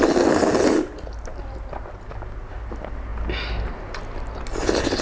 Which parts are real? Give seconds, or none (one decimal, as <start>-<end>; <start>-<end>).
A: 0.0-5.0